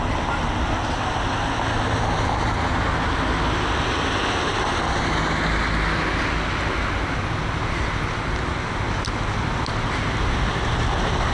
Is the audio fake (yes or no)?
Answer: no